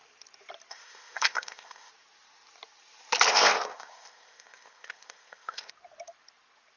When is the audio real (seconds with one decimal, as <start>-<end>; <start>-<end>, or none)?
0.0-0.7; 1.9-3.3; 5.7-6.8